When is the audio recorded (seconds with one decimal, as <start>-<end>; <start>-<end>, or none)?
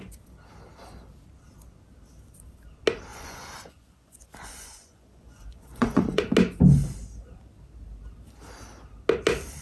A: 0.0-3.1; 6.2-9.6